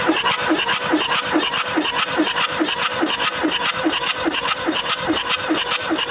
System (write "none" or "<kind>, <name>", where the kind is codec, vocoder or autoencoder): none